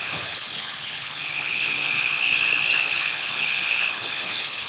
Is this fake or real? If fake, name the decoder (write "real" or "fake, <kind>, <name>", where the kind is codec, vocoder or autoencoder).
fake, codec, HILCodec